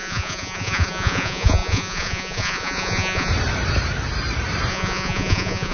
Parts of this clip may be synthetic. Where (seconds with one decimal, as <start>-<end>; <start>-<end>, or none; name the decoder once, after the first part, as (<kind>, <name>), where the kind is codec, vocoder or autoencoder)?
0.0-3.3 (vocoder, Vocos); 4.7-5.7